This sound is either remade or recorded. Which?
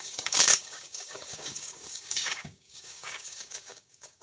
remade